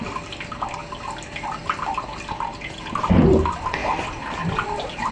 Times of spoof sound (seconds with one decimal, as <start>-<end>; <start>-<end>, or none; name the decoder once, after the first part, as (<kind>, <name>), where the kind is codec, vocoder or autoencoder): none